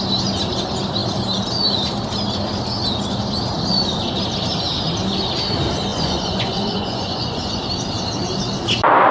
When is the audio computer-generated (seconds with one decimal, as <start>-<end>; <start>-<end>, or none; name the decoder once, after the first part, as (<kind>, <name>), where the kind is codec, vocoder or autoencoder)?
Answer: 5.9-7.6 (vocoder, Vocos)